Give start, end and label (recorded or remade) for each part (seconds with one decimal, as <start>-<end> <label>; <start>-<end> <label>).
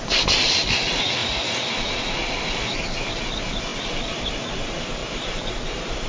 0.0-5.0 recorded; 5.0-5.5 remade; 5.5-6.1 recorded